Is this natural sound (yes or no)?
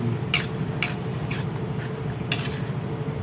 yes